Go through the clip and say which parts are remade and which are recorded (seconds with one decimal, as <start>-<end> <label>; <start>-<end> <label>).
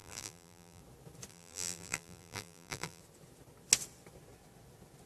0.0-0.8 remade; 0.8-1.3 recorded; 1.3-3.0 remade; 3.0-5.1 recorded